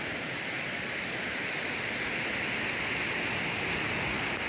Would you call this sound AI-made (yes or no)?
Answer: no